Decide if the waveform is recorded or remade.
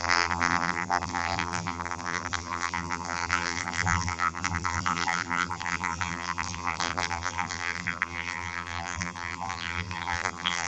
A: remade